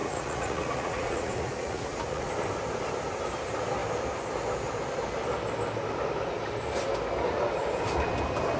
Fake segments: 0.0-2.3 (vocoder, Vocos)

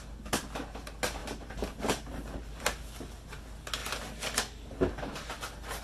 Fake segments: none

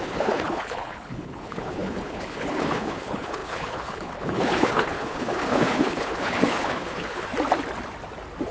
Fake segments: 0.0-7.3 (codec, HILCodec)

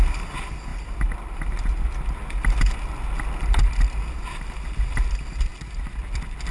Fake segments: none

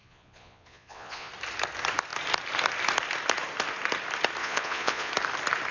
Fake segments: 0.0-1.3 (vocoder, Vocos); 4.4-5.1